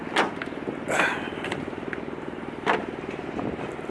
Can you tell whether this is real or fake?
real